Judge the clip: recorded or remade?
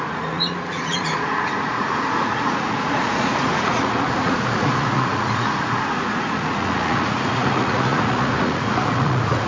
remade